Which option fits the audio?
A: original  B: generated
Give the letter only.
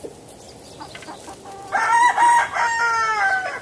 A